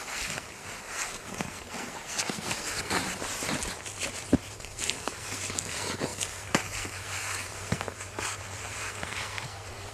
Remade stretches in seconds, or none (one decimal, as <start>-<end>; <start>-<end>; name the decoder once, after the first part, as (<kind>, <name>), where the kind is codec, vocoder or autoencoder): 0.0-3.0 (codec, SNAC); 4.5-9.9